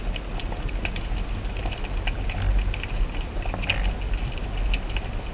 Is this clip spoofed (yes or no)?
no